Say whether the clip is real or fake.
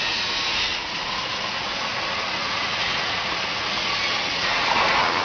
fake